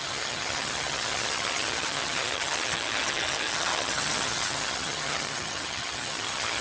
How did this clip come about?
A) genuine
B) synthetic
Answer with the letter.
B